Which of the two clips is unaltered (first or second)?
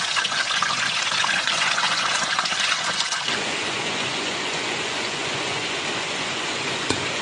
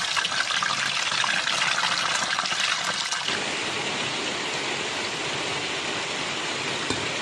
second